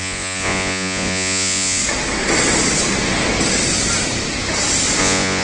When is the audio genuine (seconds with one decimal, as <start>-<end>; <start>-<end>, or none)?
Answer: 1.8-5.0